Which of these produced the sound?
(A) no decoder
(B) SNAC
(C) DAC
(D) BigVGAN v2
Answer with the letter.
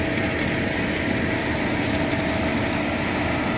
A